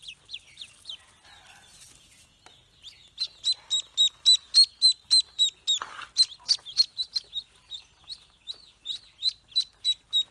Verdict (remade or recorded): recorded